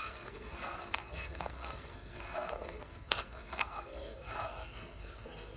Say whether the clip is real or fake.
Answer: fake